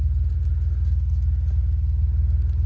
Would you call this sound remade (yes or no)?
no